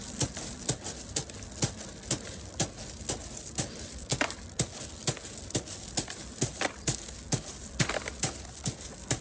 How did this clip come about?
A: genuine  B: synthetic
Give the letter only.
A